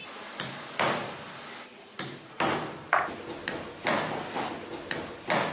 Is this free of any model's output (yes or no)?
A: yes